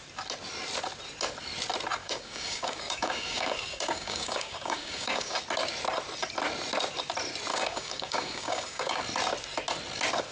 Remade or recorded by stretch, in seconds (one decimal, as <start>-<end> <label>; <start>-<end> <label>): 0.0-2.0 recorded; 2.0-5.4 remade; 5.4-7.5 recorded; 7.5-9.0 remade; 9.0-10.3 recorded